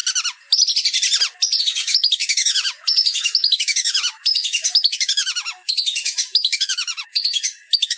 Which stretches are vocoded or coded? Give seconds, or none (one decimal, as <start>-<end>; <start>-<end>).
1.6-8.0